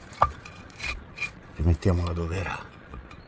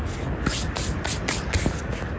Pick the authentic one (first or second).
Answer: second